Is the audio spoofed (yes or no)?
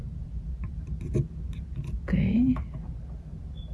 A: no